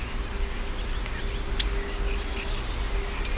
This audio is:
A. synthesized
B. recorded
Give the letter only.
B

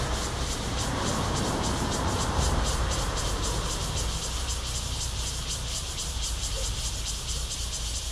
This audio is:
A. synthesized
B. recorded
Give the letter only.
A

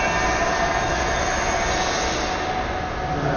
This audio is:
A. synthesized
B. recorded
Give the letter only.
B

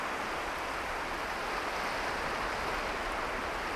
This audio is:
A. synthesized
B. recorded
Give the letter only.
B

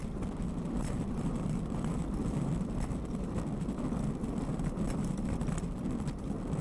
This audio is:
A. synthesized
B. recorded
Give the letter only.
A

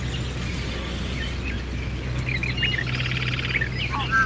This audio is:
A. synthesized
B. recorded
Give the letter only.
B